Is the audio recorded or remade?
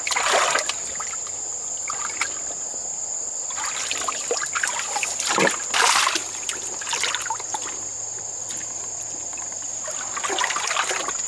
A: recorded